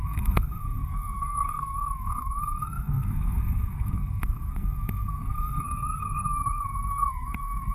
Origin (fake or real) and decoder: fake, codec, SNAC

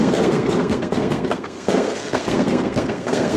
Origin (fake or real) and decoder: fake, codec, SNAC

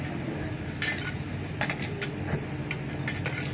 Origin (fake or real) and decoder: real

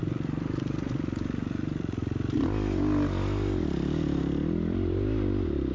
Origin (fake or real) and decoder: fake, vocoder, BigVGAN v2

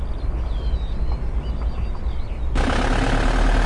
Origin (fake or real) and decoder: real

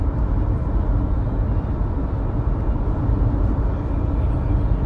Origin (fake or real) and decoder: real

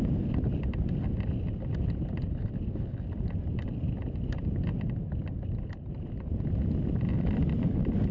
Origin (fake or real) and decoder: real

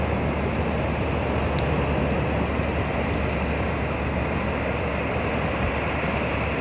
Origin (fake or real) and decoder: real